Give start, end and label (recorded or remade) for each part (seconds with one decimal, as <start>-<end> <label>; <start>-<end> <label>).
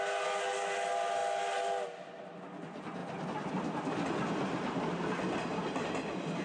0.0-6.4 recorded